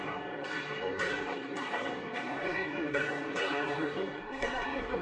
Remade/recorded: remade